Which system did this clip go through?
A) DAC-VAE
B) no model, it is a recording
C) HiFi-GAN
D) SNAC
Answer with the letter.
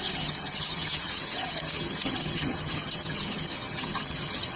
C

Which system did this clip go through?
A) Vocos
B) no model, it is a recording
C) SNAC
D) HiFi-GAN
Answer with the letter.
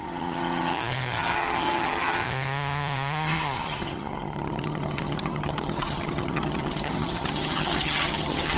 D